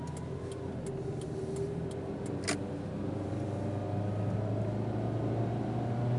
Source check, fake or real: real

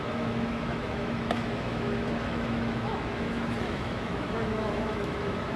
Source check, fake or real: fake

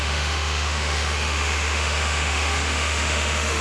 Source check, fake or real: fake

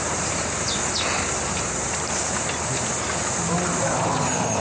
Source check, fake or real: real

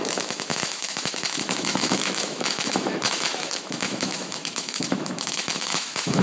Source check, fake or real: fake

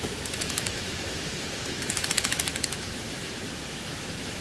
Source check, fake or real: fake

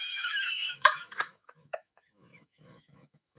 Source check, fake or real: fake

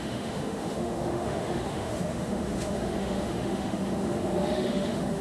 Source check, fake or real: fake